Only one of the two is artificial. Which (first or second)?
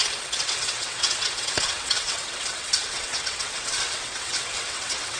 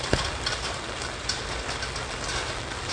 first